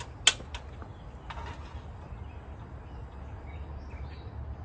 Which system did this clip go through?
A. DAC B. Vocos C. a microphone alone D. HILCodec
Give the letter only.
C